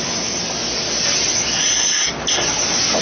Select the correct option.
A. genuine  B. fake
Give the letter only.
A